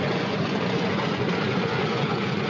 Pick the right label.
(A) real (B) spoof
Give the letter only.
B